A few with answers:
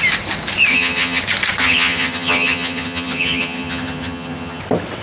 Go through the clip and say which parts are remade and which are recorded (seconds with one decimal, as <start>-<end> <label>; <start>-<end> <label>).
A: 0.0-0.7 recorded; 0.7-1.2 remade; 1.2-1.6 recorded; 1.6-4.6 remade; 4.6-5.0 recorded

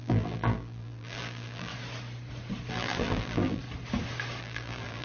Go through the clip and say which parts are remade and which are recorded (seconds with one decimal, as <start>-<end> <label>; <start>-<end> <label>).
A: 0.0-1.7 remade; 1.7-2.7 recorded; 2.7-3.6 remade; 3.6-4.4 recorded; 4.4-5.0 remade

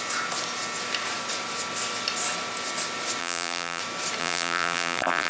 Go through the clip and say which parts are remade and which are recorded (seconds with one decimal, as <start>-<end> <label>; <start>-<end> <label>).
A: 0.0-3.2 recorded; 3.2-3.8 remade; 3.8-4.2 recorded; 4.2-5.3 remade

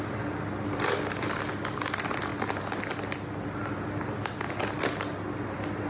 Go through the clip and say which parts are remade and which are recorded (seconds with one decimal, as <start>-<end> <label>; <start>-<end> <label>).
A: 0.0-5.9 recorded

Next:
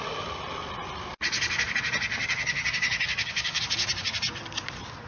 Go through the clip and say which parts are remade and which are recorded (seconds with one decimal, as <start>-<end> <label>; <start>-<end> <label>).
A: 0.0-2.1 recorded; 2.1-3.6 remade; 3.6-5.1 recorded

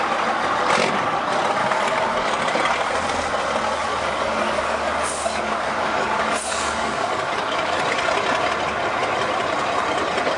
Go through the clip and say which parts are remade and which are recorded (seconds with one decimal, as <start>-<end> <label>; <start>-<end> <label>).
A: 0.0-1.6 recorded; 1.6-2.4 remade; 2.4-3.9 recorded; 3.9-7.8 remade; 7.8-10.4 recorded

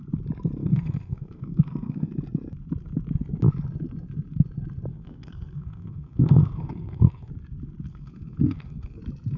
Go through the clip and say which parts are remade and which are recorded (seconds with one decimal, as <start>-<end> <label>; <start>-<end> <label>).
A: 0.0-0.6 recorded; 0.6-2.1 remade; 2.1-4.9 recorded; 4.9-7.3 remade; 7.3-7.9 recorded; 7.9-9.0 remade; 9.0-9.4 recorded